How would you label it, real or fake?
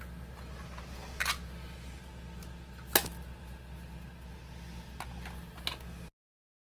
real